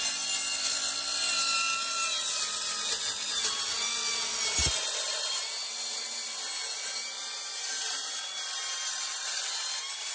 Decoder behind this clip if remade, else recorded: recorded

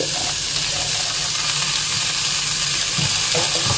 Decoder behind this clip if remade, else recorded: recorded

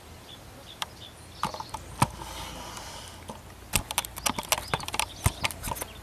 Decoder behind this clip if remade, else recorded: recorded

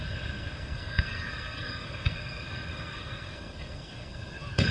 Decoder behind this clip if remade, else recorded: remade, codec, SNAC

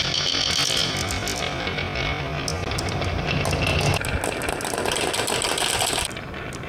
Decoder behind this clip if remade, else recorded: recorded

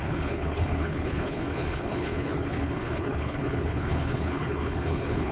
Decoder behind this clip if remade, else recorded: remade, codec, HILCodec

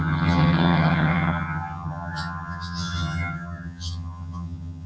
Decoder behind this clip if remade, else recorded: remade, vocoder, HiFi-GAN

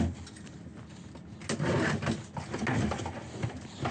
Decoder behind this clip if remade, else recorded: recorded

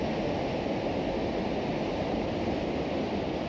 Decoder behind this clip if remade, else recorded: recorded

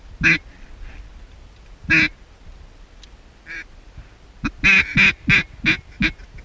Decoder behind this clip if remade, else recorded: recorded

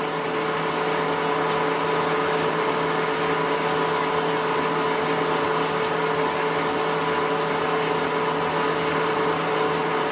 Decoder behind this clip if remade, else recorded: recorded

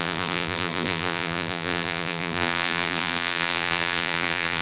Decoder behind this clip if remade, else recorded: remade, vocoder, BigVGAN v2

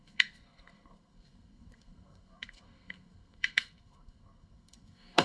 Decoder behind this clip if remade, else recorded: remade, codec, SNAC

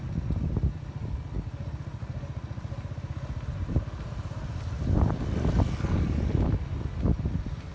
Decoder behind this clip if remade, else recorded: recorded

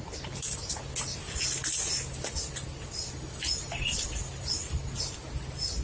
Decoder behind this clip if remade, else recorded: recorded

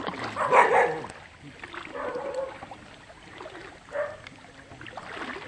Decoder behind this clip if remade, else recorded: recorded